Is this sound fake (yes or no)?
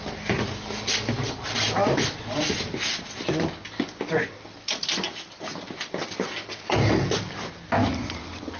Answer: no